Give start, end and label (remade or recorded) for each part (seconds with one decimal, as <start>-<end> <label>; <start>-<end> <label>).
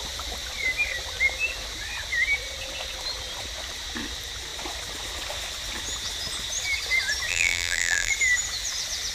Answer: 0.0-7.3 recorded; 7.3-8.1 remade; 8.1-9.1 recorded